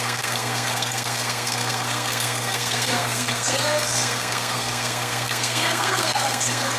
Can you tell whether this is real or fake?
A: fake